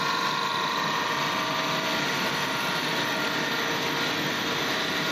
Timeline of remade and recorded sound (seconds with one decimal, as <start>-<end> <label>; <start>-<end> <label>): 0.0-5.1 recorded